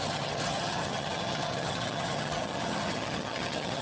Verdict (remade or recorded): remade